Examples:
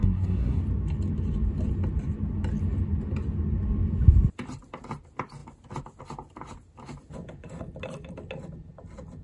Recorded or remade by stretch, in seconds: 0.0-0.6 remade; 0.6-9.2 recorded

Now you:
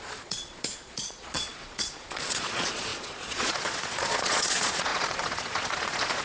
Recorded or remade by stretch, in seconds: 0.0-6.2 remade

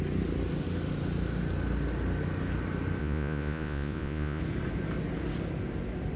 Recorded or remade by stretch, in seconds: 0.0-3.0 recorded; 3.0-4.4 remade; 4.4-6.2 recorded

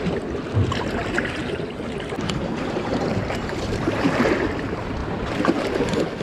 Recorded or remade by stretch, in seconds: 0.0-1.0 recorded; 1.0-4.2 remade; 4.2-5.0 recorded; 5.0-5.8 remade; 5.8-6.2 recorded

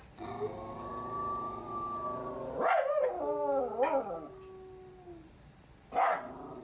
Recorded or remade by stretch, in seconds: 0.0-6.6 recorded